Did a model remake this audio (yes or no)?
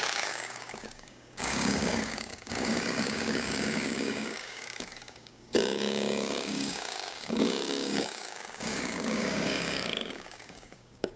yes